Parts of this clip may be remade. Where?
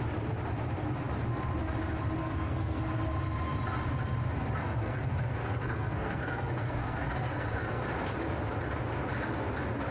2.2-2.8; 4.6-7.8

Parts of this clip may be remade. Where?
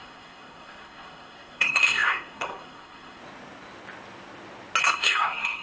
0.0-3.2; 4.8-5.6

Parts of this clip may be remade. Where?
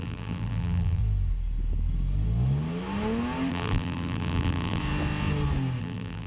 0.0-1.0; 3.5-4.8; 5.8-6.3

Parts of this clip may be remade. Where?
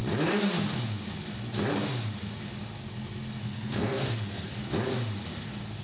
3.4-4.5